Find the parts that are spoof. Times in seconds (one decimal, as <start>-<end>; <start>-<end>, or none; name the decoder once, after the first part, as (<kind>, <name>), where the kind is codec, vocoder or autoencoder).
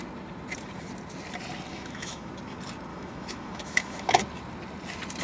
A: 1.7-2.3 (autoencoder, DAC-VAE); 2.9-4.2